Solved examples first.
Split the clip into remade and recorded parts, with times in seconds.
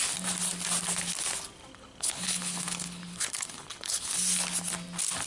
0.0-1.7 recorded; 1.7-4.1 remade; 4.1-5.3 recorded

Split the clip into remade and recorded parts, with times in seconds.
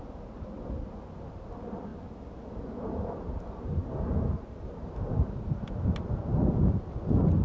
0.0-7.4 recorded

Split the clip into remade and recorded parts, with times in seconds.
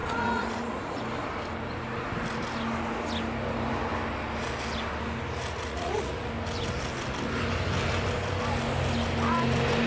0.0-1.0 remade; 1.0-5.7 recorded; 5.7-6.3 remade; 6.3-9.9 recorded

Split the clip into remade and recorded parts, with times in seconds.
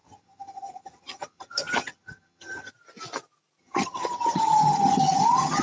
0.0-2.7 remade; 2.7-3.6 recorded; 3.6-5.6 remade